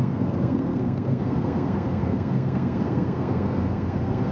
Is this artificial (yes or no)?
yes